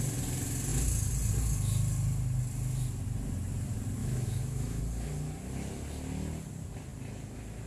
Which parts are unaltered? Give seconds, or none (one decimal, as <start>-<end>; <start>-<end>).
0.0-4.0; 4.8-7.7